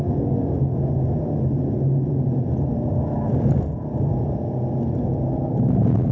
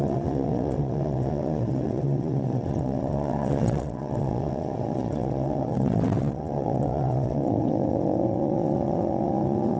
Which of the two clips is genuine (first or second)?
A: first